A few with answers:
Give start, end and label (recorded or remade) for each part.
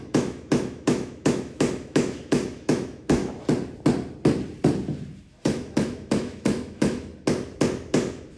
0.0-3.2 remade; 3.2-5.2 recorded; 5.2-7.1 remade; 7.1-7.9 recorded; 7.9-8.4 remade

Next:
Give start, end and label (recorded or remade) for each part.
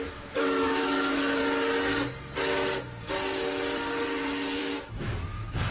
0.0-1.4 remade; 1.4-4.6 recorded; 4.6-5.7 remade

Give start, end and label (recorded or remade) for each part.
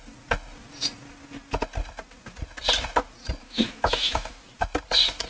0.0-3.4 recorded; 3.4-4.4 remade; 4.4-5.3 recorded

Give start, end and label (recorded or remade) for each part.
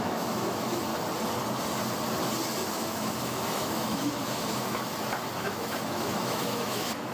0.0-0.9 remade; 0.9-2.7 recorded; 2.7-4.9 remade; 4.9-5.4 recorded; 5.4-7.1 remade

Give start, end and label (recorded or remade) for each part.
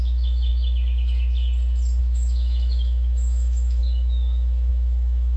0.0-0.5 remade; 0.5-2.0 recorded; 2.0-5.4 remade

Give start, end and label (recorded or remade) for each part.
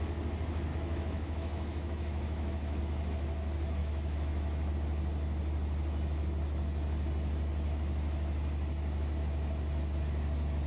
0.0-0.7 recorded; 0.7-2.8 remade; 2.8-3.8 recorded; 3.8-4.7 remade; 4.7-10.7 recorded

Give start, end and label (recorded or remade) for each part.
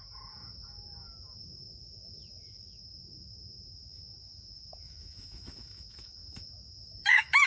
0.0-7.5 remade